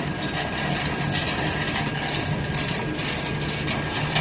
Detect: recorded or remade recorded